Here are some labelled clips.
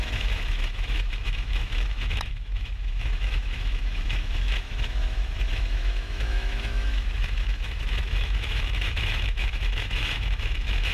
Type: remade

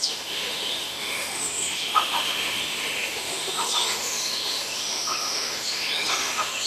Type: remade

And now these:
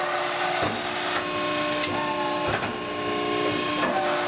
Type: recorded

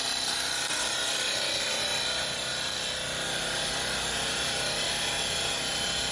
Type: recorded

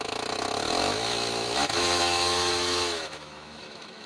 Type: remade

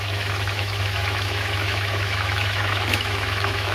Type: remade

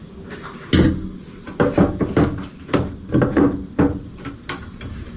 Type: recorded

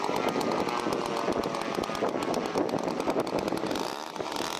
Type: recorded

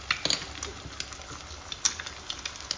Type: recorded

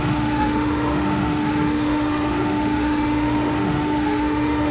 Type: remade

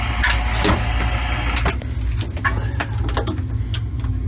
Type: recorded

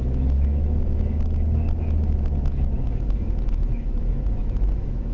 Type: remade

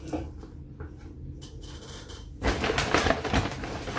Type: recorded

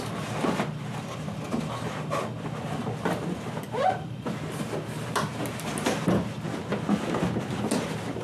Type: recorded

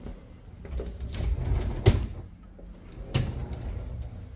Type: recorded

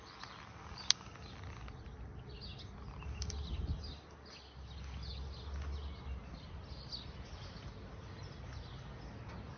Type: recorded